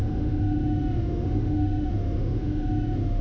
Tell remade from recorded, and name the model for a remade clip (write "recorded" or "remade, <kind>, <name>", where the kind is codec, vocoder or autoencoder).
remade, autoencoder, DAC-VAE